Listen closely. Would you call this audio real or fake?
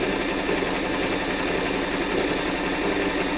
real